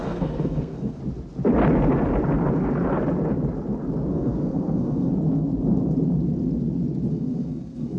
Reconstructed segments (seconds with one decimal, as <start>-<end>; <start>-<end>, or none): 0.0-1.0; 4.1-5.1; 7.1-8.0